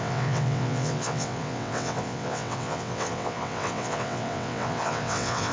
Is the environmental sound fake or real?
fake